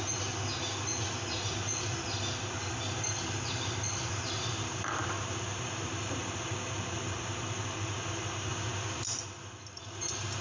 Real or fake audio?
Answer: real